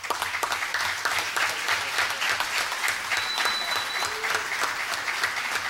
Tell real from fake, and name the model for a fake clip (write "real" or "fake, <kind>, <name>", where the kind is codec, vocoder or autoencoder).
real